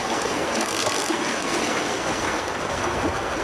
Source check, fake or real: fake